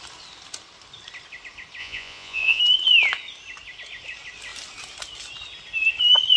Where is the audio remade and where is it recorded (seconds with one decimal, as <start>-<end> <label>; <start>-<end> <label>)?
0.0-1.8 recorded; 1.8-2.6 remade; 2.6-6.4 recorded